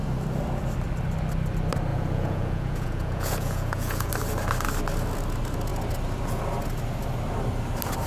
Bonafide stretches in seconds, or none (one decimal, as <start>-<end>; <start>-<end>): 0.0-1.9; 4.1-8.1